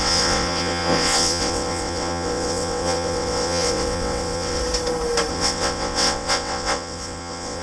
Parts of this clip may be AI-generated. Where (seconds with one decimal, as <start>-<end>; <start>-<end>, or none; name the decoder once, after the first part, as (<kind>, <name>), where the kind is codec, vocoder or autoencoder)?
0.0-4.6 (vocoder, WaveNeXt); 5.3-7.6

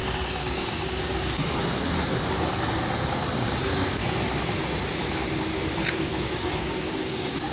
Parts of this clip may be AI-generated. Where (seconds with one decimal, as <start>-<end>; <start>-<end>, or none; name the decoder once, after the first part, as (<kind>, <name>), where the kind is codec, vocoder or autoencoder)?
0.0-1.4 (codec, DAC); 3.1-4.0; 6.0-7.5

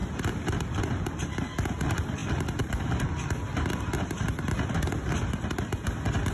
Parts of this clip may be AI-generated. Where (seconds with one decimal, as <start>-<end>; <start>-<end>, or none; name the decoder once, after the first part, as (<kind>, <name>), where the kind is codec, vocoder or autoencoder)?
none

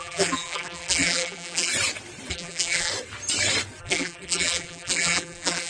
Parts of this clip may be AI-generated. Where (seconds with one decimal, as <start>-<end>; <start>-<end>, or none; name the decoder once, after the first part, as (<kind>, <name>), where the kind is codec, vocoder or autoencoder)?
0.0-1.7 (vocoder, BigVGAN v2); 2.3-2.9; 3.8-5.7

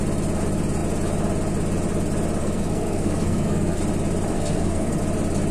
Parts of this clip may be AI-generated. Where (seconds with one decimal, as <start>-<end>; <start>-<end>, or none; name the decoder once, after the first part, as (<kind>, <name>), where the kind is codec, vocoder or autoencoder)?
2.4-3.8 (codec, SNAC); 4.3-5.0